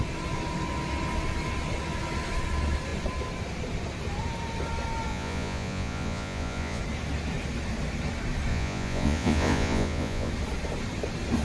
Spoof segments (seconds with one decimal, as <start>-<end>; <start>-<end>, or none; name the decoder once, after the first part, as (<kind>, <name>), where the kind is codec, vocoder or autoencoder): 5.1-6.8 (vocoder, Vocos); 8.5-10.3